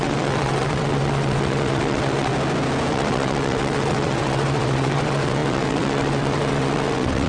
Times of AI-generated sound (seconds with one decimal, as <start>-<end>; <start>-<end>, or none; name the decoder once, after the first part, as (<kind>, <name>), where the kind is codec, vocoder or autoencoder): 0.0-2.3 (vocoder, WaveNeXt); 2.9-7.3